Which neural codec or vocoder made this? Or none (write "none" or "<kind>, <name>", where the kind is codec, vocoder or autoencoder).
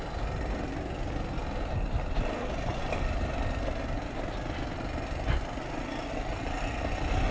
none